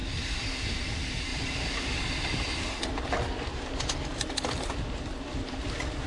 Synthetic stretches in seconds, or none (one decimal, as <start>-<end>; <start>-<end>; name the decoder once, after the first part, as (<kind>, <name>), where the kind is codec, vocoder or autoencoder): 0.0-0.8 (vocoder, BigVGAN v2); 1.3-5.0